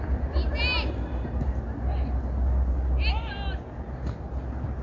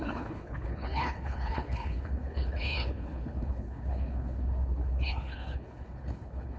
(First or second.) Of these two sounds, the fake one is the second